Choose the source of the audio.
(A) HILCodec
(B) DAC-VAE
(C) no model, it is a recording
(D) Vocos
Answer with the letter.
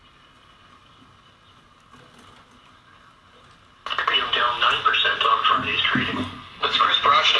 C